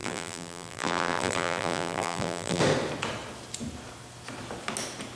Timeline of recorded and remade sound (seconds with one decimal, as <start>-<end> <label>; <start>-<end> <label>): 0.0-2.6 remade; 2.6-5.2 recorded